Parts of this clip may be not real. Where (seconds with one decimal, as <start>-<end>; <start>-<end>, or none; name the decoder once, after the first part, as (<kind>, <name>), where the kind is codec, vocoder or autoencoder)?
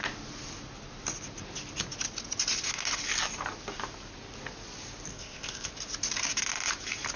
5.1-5.7 (codec, ZipCodec)